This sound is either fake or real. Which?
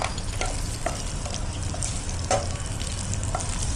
real